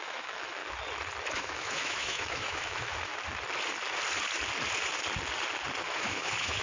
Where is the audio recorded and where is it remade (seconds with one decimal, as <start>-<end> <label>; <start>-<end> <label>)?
0.0-0.6 remade; 0.6-1.3 recorded; 1.3-3.1 remade; 3.1-5.8 recorded; 5.8-6.6 remade